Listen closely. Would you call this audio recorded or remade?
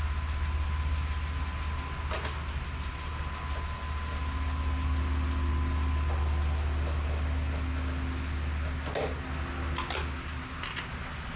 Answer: recorded